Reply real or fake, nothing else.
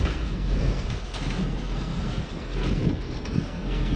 fake